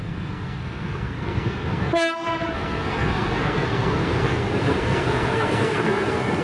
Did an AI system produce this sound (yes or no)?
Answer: yes